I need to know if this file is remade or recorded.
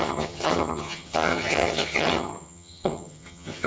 remade